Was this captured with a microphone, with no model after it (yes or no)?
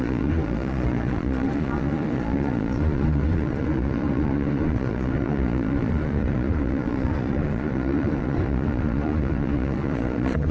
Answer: no